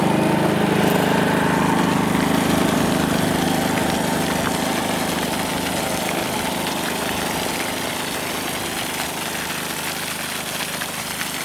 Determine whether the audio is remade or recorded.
recorded